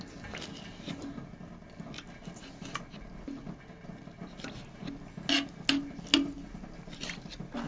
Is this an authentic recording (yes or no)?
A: yes